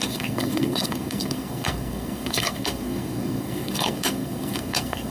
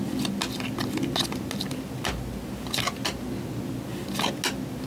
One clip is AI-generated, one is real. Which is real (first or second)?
second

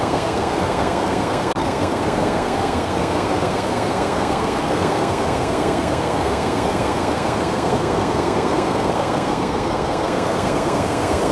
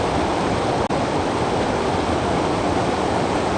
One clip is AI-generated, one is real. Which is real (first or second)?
second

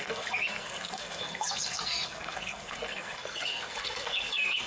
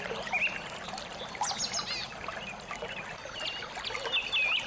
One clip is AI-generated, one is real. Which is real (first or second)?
second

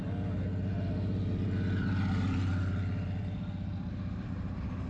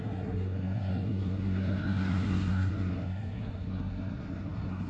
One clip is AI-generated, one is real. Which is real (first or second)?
first